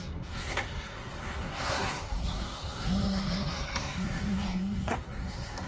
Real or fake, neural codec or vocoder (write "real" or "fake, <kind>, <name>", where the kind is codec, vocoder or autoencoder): fake, codec, SNAC